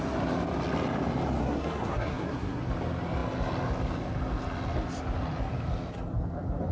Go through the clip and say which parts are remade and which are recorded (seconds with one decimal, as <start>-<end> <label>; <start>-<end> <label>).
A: 0.0-1.4 recorded; 1.4-2.6 remade; 2.6-6.7 recorded